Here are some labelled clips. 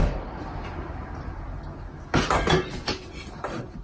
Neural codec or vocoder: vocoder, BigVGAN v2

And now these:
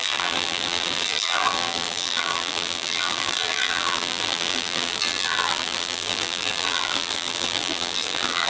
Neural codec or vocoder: vocoder, BigVGAN v2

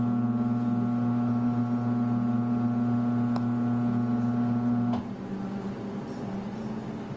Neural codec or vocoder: none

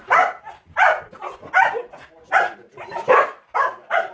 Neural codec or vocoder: none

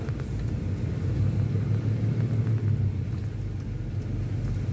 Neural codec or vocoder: none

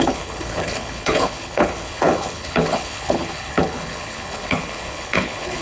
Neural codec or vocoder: codec, HILCodec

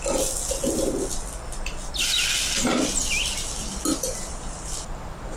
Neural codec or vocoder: none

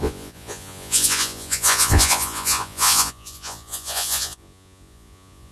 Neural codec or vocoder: vocoder, Vocos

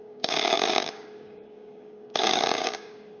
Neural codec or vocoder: codec, DAC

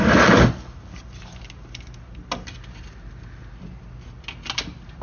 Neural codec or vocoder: none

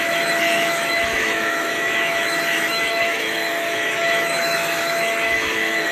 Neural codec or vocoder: autoencoder, DAC-VAE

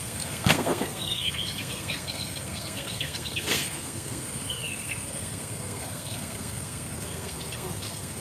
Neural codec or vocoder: codec, SNAC